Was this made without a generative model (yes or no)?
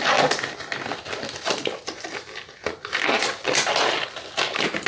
yes